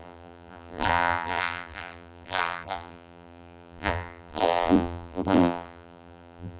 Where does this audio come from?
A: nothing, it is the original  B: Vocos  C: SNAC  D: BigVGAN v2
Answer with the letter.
D